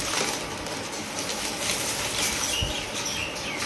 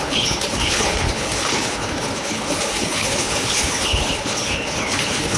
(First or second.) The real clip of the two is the first